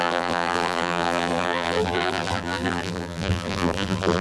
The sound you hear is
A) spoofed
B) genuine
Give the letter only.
A